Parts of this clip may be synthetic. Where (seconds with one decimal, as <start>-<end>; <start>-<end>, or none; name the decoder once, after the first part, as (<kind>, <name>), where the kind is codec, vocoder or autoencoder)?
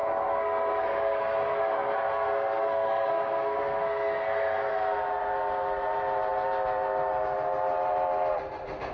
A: 0.0-4.7 (codec, SNAC)